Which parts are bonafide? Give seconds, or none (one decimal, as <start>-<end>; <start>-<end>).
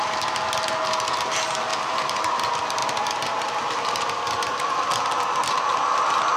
0.0-1.7; 2.3-6.4